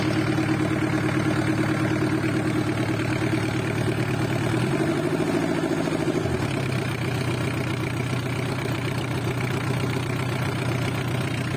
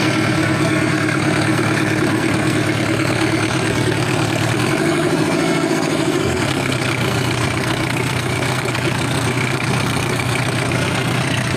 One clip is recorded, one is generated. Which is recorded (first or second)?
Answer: first